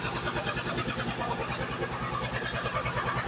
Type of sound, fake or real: real